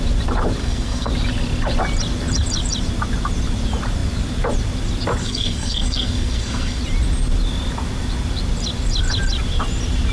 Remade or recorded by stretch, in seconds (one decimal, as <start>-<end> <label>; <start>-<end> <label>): 0.0-0.6 recorded; 0.6-1.1 remade; 1.1-5.2 recorded; 5.2-6.8 remade; 6.8-10.1 recorded